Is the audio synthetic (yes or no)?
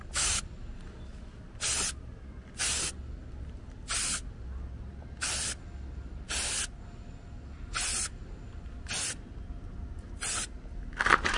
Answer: no